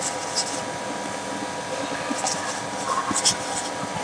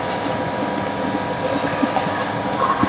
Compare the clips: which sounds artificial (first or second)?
second